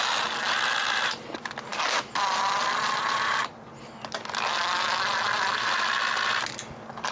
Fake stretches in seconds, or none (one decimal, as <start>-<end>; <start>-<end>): none